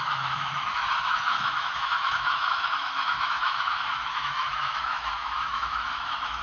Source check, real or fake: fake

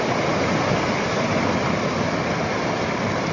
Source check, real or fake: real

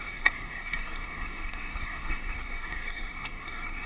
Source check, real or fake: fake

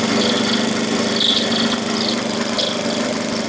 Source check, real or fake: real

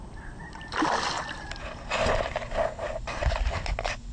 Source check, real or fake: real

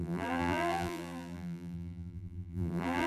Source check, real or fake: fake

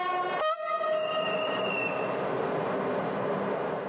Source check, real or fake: real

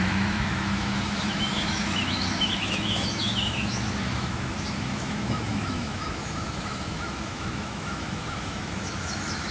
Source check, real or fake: fake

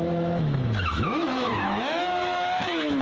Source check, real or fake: fake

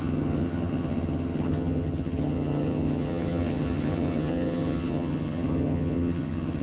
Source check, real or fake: fake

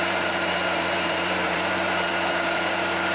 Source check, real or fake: fake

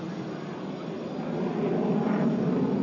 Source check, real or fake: real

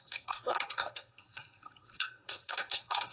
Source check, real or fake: fake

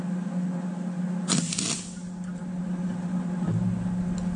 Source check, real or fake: real